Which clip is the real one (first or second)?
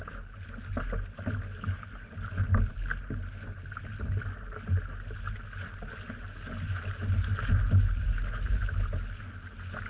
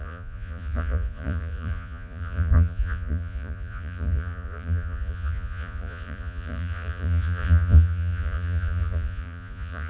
first